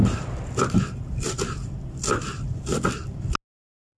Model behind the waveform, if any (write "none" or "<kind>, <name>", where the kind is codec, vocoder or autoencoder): none